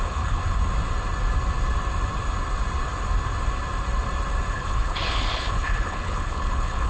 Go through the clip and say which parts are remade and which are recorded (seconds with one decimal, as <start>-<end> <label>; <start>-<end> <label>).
0.0-0.4 remade; 0.4-4.5 recorded; 4.5-6.9 remade